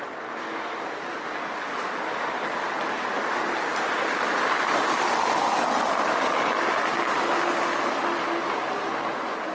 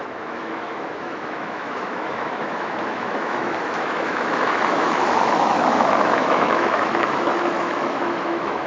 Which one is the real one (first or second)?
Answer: first